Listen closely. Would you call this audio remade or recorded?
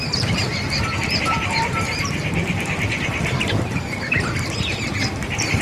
remade